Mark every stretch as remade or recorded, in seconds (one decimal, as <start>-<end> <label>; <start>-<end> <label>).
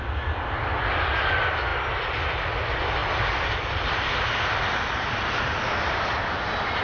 0.0-6.8 recorded